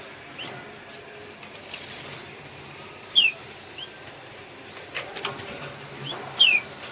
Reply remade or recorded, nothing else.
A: recorded